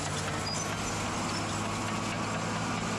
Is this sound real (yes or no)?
yes